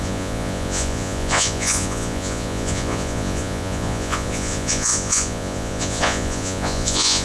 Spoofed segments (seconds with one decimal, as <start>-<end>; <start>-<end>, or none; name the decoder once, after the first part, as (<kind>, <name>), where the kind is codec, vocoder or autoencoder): 0.0-7.2 (vocoder, Vocos)